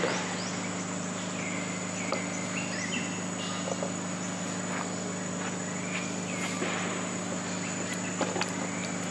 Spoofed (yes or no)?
no